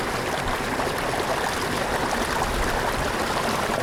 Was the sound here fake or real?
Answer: real